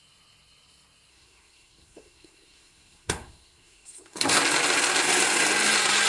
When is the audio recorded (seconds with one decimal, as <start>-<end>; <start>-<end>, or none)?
0.0-1.1; 4.4-6.1